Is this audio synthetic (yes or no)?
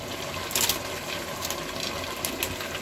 no